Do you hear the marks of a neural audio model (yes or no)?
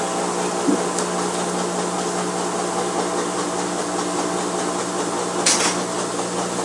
no